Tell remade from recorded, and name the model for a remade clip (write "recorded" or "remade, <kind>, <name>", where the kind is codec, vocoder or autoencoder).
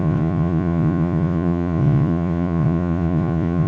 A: remade, vocoder, Vocos